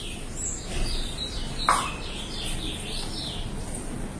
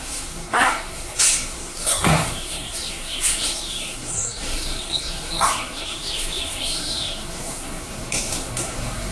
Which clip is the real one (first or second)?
first